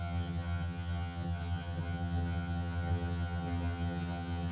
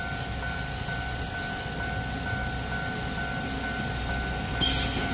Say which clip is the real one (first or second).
second